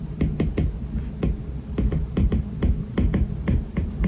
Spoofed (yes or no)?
no